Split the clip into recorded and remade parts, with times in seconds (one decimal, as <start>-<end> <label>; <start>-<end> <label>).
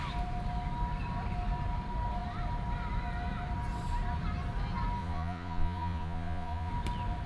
0.0-5.0 recorded; 5.0-6.7 remade; 6.7-7.3 recorded